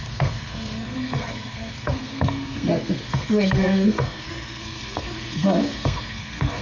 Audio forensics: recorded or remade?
remade